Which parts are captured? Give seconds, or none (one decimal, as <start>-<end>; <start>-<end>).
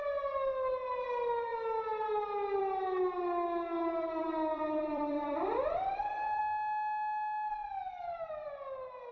0.0-3.8; 6.4-7.6; 8.3-9.1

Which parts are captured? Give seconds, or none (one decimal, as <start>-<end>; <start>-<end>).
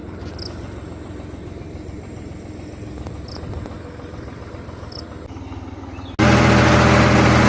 0.0-7.5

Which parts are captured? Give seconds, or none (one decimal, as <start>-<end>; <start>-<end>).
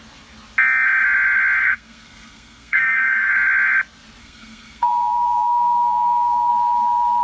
0.0-1.6; 3.3-4.2; 6.5-7.2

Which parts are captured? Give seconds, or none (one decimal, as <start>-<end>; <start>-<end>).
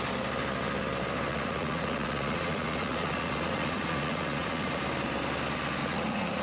0.0-1.3; 4.8-5.8